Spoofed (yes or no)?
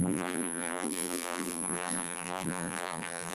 yes